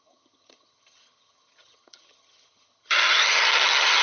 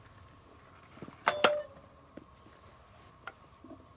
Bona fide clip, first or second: second